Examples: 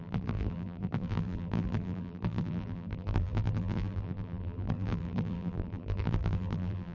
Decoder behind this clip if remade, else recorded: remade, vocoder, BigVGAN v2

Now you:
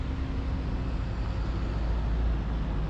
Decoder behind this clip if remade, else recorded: recorded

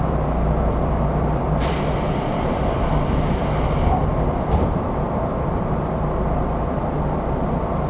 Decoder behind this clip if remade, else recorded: remade, vocoder, BigVGAN v2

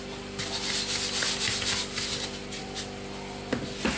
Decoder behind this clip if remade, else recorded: recorded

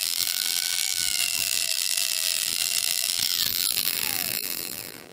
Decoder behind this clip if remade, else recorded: remade, vocoder, BigVGAN v2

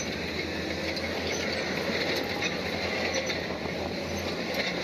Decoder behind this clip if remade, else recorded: recorded